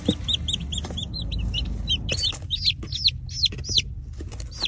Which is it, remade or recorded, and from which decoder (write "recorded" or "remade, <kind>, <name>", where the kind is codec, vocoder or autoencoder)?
recorded